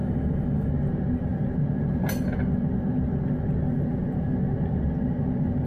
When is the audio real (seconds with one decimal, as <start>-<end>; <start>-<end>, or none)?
0.7-5.7